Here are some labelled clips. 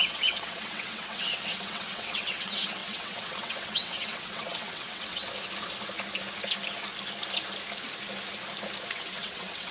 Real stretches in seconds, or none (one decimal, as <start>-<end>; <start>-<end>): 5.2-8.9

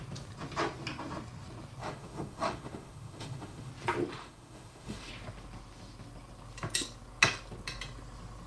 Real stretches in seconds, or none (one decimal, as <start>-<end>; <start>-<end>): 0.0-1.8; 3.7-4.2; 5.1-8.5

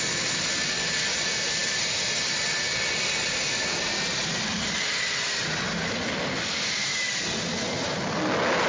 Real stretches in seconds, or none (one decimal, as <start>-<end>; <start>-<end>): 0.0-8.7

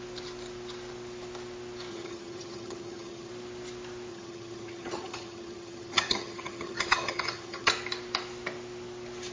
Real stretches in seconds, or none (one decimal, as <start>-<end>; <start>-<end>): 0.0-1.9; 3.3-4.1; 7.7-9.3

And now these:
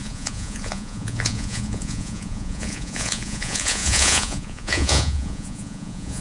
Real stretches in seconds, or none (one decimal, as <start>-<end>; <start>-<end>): none

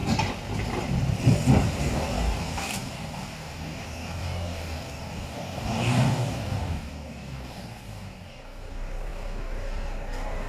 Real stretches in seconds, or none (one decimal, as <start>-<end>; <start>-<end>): 0.0-1.8

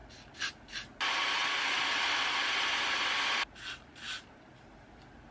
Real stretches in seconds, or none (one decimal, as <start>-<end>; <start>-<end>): 0.0-5.3

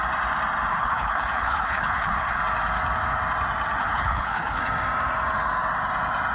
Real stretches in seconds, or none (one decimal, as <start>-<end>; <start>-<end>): 0.0-0.7; 2.4-3.8; 4.6-6.3